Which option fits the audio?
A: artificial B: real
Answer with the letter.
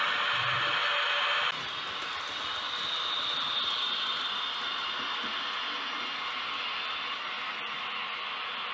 B